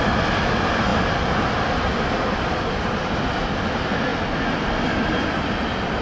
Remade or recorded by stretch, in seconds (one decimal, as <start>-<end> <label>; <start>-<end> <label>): 0.0-6.0 recorded